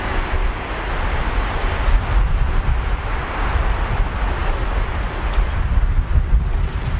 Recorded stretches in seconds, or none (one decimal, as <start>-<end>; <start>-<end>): 0.0-3.2; 3.9-4.4; 6.4-7.0